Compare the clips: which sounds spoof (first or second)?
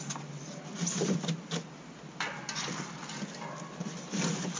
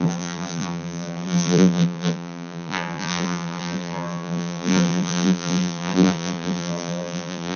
second